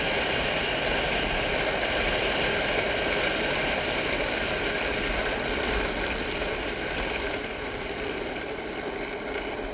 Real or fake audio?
real